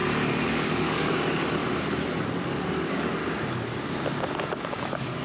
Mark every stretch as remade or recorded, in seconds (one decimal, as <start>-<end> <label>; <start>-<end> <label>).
0.0-1.6 remade; 1.6-2.4 recorded; 2.4-3.2 remade; 3.2-4.8 recorded; 4.8-5.2 remade